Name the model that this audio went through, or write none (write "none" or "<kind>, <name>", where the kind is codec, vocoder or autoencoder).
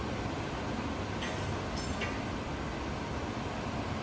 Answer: none